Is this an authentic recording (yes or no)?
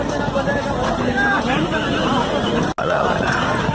yes